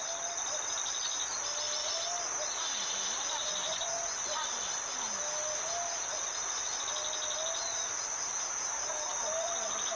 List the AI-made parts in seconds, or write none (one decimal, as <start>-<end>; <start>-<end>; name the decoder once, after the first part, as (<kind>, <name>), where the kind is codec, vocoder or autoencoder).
3.4-4.5 (vocoder, Vocos)